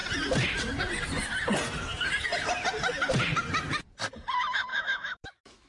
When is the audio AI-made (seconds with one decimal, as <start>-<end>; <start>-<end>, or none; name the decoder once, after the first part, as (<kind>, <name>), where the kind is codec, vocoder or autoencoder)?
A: 4.7-5.7 (autoencoder, DAC-VAE)